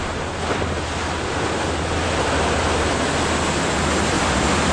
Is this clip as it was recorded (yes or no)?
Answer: yes